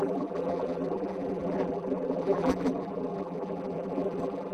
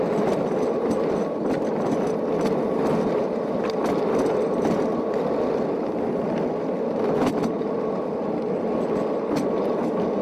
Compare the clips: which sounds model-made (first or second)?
first